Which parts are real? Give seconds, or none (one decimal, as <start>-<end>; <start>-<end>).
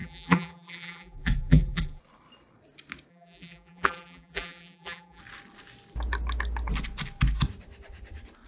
2.0-3.1; 5.2-8.5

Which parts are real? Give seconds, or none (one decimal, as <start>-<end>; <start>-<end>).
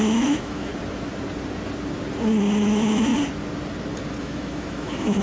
0.7-2.6; 3.1-4.2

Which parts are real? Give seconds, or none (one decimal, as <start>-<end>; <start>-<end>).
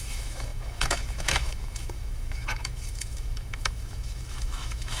none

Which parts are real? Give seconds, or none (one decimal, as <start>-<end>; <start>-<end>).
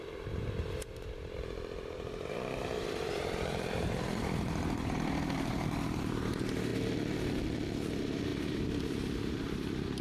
6.7-7.9